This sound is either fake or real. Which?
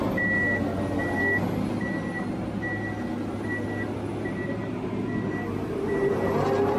real